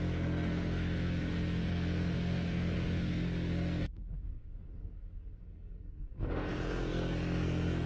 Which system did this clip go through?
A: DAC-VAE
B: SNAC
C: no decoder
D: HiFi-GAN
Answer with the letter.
B